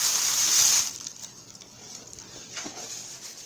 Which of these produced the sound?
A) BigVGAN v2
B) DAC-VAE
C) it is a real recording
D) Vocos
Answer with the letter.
A